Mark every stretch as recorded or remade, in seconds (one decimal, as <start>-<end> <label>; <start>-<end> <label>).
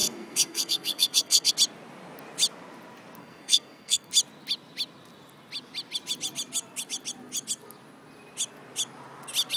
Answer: 0.0-1.5 remade; 1.5-3.2 recorded; 3.2-4.1 remade; 4.1-9.6 recorded